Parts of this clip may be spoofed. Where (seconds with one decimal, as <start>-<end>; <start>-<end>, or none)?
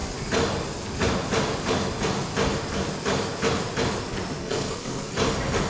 4.4-5.1